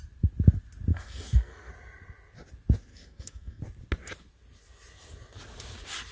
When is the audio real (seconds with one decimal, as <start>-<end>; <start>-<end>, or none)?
0.0-0.9; 1.7-2.9; 3.6-6.1

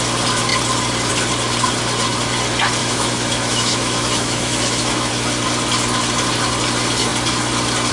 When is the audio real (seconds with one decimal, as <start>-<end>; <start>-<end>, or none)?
0.0-2.8; 5.1-7.9

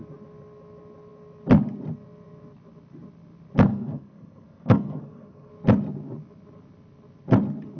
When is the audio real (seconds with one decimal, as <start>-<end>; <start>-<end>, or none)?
0.0-3.7; 5.5-7.8